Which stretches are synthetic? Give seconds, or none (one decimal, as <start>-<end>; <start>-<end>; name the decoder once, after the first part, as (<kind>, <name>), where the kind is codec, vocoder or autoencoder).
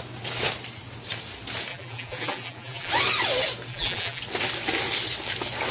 1.7-2.9 (vocoder, BigVGAN v2); 3.7-4.2